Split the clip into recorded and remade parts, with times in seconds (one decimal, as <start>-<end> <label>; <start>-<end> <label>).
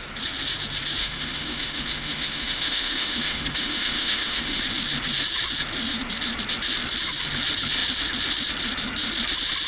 0.0-1.0 recorded; 1.0-4.6 remade; 4.6-9.7 recorded